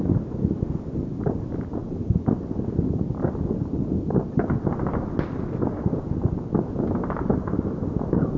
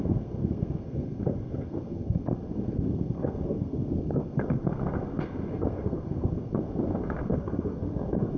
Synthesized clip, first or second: second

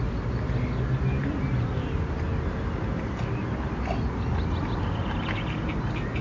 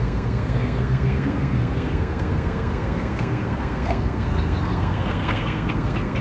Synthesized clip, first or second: second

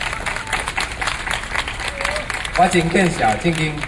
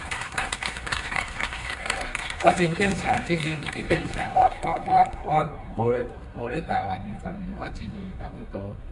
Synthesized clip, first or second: second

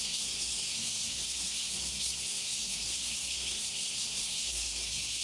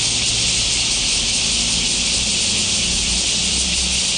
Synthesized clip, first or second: first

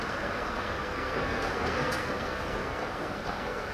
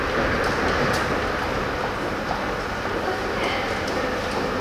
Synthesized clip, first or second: first